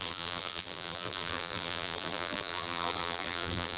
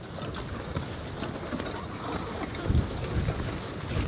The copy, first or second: first